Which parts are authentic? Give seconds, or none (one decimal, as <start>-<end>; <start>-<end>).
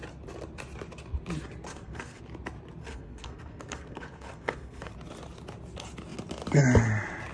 0.0-1.7; 2.2-2.8; 4.9-7.3